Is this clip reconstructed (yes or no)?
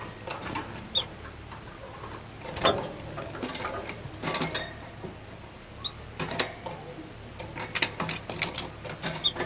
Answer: no